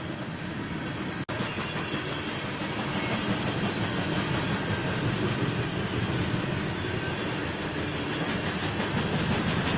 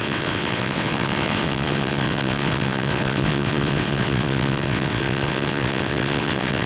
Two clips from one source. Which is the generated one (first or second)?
second